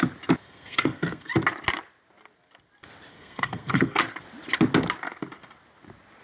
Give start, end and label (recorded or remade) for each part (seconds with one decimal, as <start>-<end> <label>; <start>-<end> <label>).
0.0-0.4 recorded; 0.4-1.3 remade; 1.3-3.1 recorded; 3.1-4.0 remade; 4.0-6.2 recorded